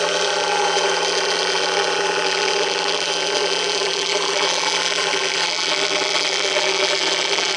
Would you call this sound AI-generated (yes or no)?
yes